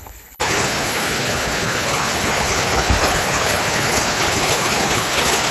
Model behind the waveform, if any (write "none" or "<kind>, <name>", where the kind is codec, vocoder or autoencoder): codec, HILCodec